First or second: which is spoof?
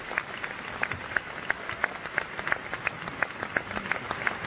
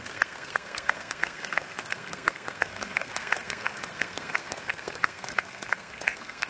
second